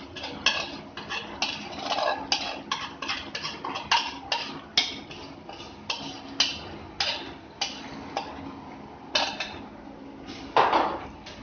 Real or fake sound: real